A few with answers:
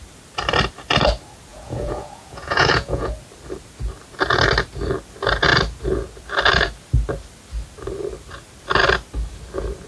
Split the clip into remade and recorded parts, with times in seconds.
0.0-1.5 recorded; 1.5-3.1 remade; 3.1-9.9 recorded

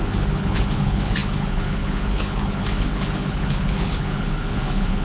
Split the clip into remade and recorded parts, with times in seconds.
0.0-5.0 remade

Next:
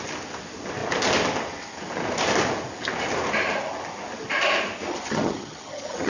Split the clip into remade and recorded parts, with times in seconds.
0.0-4.9 recorded; 4.9-6.1 remade

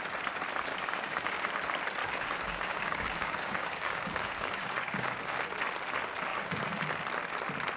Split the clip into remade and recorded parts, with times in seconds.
0.0-0.7 recorded; 0.7-1.5 remade; 1.5-2.0 recorded; 2.0-5.6 remade; 5.6-6.3 recorded; 6.3-7.0 remade; 7.0-7.8 recorded

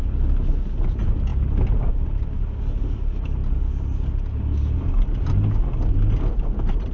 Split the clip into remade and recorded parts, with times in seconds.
0.0-6.9 recorded

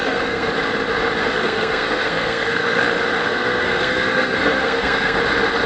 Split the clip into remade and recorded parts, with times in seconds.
0.0-0.5 remade; 0.5-1.2 recorded; 1.2-2.8 remade; 2.8-3.2 recorded; 3.2-5.2 remade; 5.2-5.7 recorded